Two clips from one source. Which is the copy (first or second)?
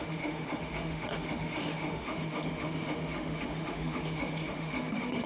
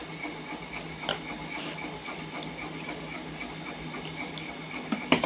first